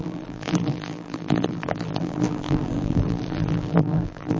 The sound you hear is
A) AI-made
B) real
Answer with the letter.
A